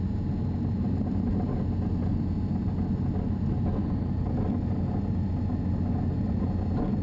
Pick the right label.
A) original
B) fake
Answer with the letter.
A